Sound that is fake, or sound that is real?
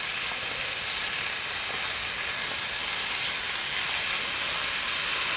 real